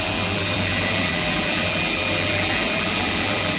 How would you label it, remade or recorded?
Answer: remade